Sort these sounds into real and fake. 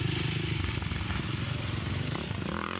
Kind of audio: fake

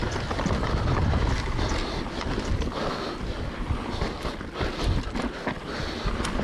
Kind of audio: fake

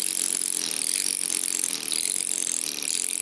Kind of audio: real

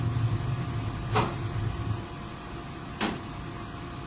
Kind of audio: real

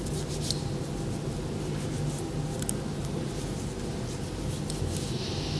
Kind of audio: real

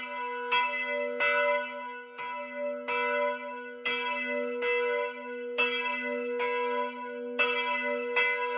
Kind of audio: real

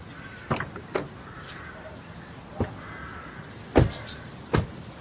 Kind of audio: real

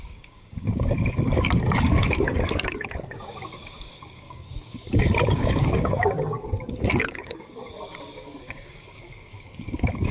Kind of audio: fake